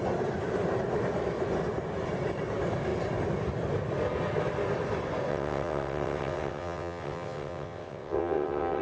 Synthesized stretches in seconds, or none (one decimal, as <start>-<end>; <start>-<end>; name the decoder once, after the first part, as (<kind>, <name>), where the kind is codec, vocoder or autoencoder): 5.3-8.8 (vocoder, WaveNeXt)